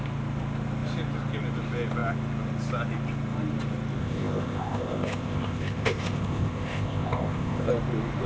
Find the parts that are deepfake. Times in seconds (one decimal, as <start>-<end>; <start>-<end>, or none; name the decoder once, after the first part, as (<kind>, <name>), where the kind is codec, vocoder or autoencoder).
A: 4.0-7.7 (codec, ZipCodec)

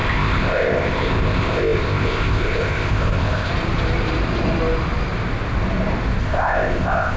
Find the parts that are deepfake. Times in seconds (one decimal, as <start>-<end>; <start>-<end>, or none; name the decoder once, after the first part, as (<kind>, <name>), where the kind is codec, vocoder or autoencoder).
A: 0.0-3.5 (codec, ZipCodec); 6.2-7.2

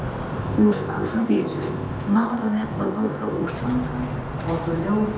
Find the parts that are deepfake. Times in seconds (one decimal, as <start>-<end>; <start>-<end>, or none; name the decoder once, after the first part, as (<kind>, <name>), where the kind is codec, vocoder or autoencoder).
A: 0.4-3.5 (codec, ZipCodec)

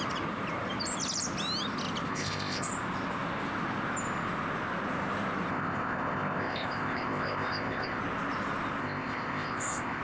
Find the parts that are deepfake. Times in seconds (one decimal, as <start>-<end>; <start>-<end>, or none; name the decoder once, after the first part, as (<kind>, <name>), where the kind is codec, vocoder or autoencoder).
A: 2.1-2.7 (codec, ZipCodec); 5.5-8.0; 8.8-10.0

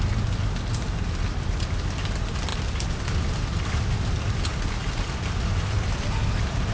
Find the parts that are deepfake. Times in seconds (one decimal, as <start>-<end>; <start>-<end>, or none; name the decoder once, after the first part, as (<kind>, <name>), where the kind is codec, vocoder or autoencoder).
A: none

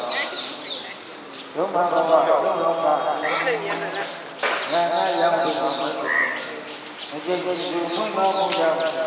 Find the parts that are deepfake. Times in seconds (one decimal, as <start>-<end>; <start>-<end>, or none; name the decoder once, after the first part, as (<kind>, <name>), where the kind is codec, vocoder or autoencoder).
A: none